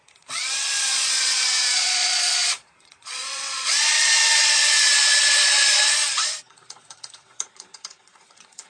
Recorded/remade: remade